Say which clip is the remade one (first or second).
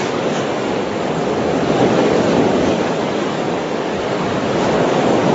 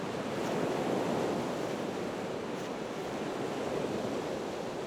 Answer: first